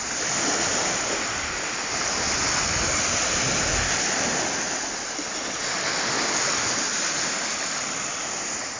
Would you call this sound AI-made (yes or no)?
no